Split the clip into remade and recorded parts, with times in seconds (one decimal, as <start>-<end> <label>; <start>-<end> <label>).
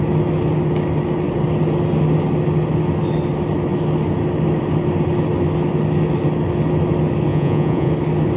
0.0-7.3 recorded; 7.3-7.9 remade; 7.9-8.4 recorded